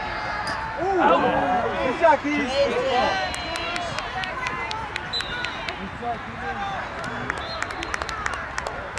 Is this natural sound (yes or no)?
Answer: yes